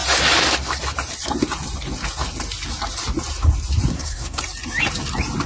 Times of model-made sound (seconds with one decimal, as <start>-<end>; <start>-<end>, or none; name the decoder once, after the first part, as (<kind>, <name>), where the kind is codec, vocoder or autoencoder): 3.9-4.4 (codec, SNAC)